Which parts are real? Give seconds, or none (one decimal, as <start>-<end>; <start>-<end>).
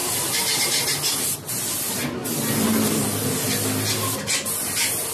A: 0.0-5.1